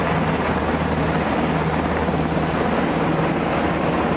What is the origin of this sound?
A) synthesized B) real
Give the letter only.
B